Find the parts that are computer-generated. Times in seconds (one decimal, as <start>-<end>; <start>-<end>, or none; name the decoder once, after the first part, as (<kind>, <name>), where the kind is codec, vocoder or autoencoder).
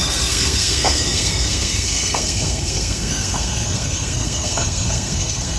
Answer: 0.0-5.6 (codec, SNAC)